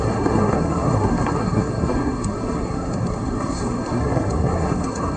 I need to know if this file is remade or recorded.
remade